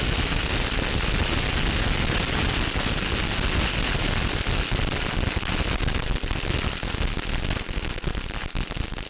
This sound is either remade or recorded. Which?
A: recorded